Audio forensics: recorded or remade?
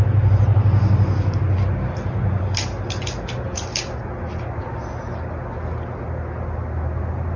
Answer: recorded